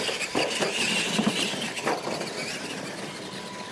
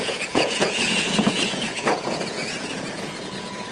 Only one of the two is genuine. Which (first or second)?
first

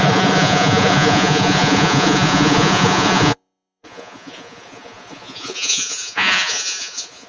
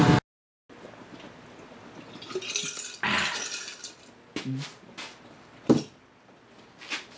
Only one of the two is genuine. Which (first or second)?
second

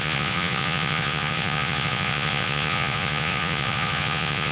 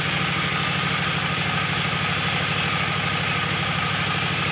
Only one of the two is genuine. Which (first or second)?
second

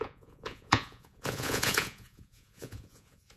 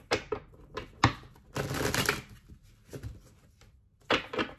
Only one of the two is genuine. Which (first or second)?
second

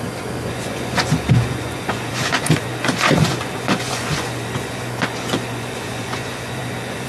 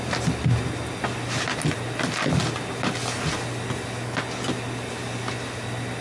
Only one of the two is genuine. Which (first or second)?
second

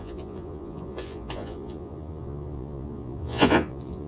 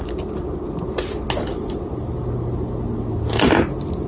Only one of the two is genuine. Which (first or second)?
second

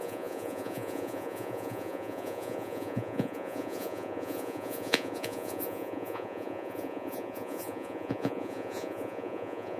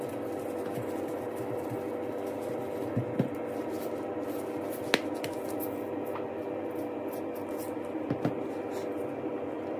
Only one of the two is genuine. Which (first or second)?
second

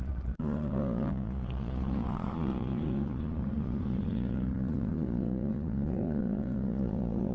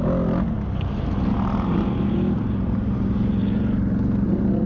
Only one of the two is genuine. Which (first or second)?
second